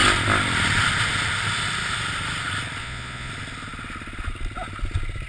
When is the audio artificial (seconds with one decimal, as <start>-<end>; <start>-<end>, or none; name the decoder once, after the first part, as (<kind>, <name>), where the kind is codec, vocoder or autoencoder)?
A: 2.8-3.3 (vocoder, Vocos)